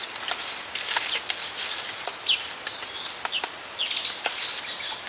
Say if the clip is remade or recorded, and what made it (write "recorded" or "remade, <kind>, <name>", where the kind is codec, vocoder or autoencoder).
recorded